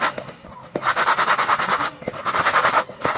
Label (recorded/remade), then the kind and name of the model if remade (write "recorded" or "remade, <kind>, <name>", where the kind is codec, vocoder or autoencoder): recorded